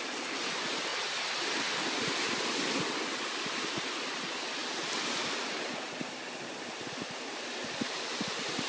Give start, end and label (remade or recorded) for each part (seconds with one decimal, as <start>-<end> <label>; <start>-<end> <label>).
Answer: 0.0-8.7 recorded